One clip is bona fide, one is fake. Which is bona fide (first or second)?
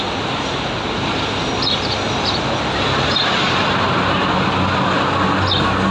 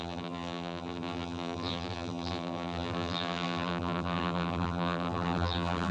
first